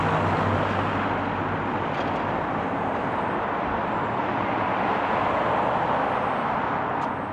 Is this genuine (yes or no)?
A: yes